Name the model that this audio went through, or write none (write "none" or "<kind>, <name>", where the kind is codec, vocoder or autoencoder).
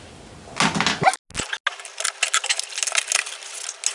none